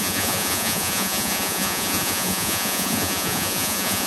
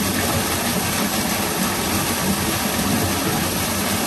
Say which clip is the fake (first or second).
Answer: first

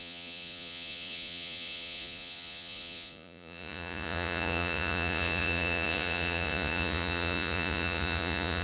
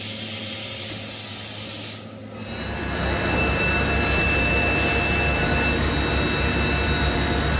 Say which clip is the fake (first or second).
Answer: first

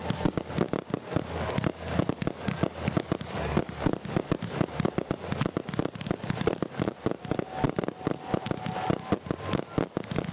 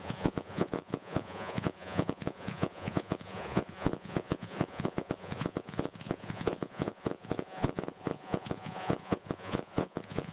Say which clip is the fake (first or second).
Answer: second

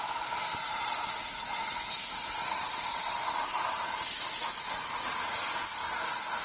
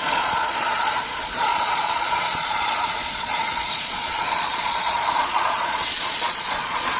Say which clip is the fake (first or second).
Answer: second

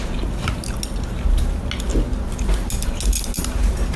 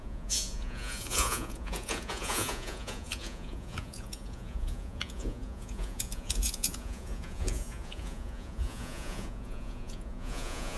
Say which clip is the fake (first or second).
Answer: second